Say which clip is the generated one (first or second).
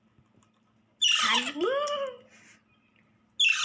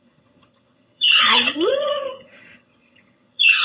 second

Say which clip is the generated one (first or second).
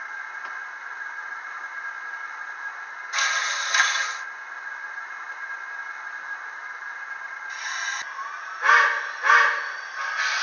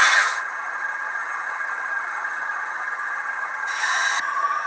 second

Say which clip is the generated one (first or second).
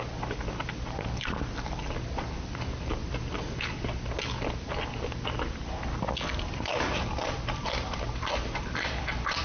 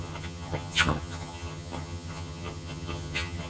second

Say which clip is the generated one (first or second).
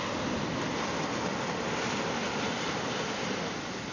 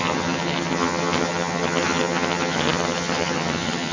second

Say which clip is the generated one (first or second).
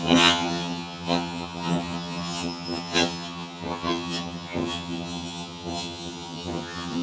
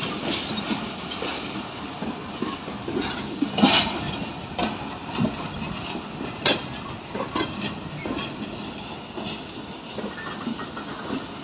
first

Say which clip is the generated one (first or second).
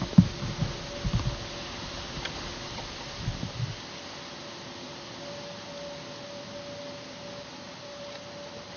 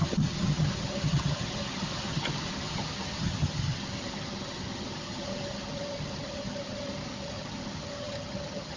second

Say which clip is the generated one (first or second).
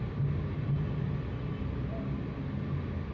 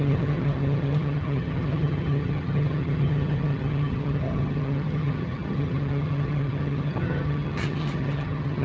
second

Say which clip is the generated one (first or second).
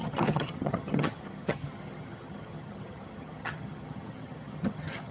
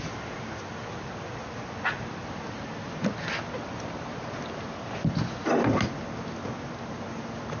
first